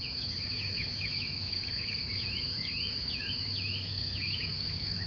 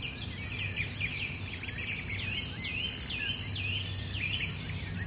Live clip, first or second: second